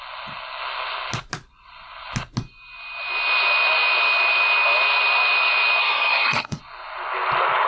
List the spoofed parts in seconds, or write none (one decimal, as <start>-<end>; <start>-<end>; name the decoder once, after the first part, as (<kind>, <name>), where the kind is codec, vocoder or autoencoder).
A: 5.8-6.6 (codec, SNAC)